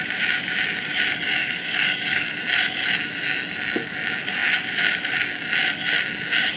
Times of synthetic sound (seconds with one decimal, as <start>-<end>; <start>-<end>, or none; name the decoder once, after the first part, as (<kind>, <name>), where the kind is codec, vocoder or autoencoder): 1.4-2.3 (codec, DAC)